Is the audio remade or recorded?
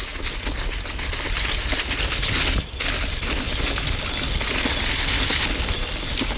recorded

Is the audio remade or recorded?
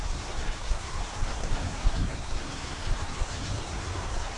remade